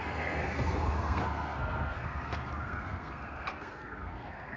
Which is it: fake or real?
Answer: fake